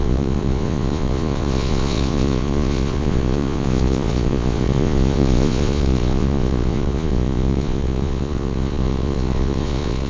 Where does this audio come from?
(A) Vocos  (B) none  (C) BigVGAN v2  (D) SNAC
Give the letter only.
A